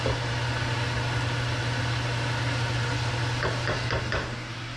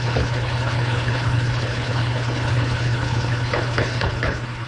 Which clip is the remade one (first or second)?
second